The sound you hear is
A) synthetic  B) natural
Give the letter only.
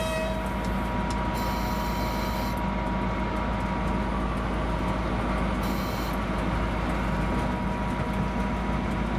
B